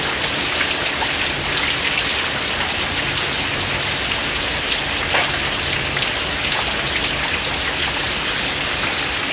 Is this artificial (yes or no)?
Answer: no